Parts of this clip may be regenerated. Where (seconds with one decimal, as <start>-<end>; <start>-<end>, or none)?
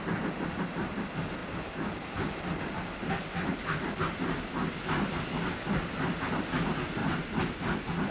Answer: none